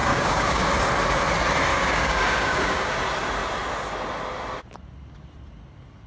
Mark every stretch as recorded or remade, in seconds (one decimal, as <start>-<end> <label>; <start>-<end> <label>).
0.0-0.7 remade; 0.7-1.7 recorded; 1.7-2.9 remade; 2.9-6.1 recorded